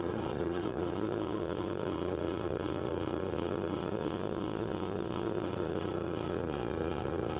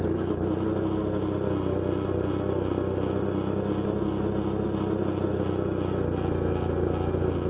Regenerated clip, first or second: first